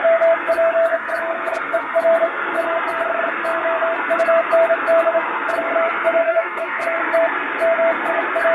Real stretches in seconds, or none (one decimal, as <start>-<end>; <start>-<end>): 0.0-6.2; 6.8-8.5